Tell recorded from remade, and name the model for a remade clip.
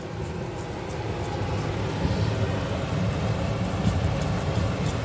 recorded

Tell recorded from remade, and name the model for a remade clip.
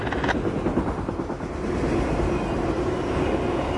recorded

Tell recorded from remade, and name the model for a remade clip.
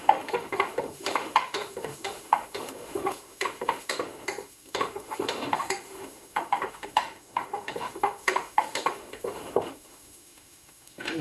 remade, autoencoder, DAC-VAE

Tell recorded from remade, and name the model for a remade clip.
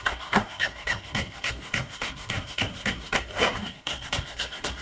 remade, codec, SNAC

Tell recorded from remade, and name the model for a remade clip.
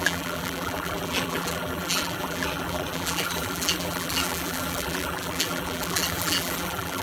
remade, vocoder, BigVGAN v2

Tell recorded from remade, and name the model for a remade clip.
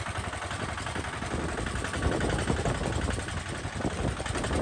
recorded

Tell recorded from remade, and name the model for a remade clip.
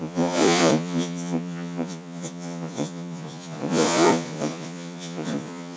remade, vocoder, Vocos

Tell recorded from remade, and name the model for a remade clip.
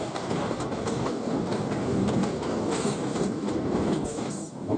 remade, codec, DAC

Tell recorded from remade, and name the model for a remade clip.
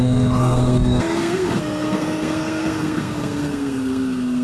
remade, codec, SNAC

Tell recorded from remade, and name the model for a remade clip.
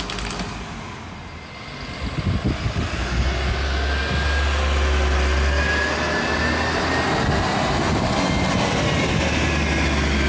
recorded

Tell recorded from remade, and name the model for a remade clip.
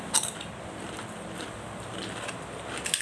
recorded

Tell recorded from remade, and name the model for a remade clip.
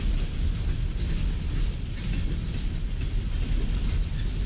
recorded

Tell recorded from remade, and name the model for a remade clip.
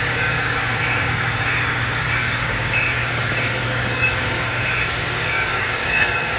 remade, codec, DAC